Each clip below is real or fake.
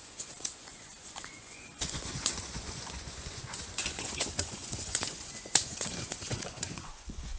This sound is fake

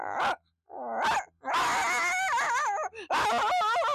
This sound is real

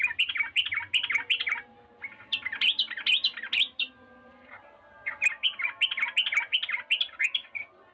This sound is real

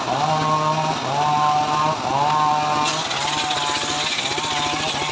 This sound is real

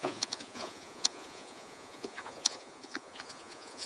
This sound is fake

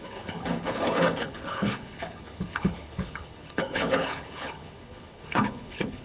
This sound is fake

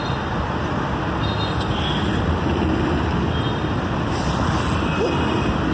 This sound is real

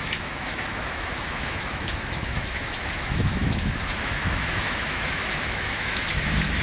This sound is fake